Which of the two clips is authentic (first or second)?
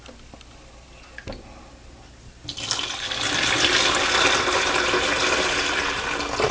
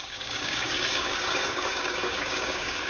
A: first